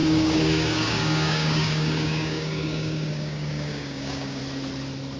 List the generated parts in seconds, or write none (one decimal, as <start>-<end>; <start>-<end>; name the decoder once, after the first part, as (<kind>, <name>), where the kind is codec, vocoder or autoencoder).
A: 0.0-4.4 (codec, DAC)